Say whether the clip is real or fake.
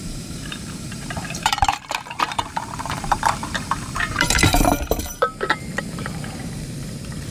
fake